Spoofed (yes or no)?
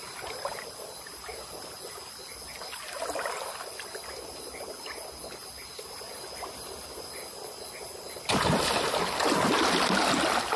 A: no